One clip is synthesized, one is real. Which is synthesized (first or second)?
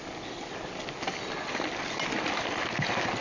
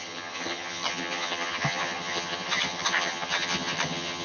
second